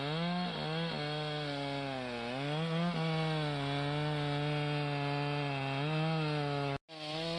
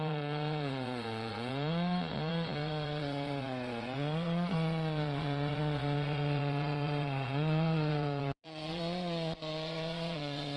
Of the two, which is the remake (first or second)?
second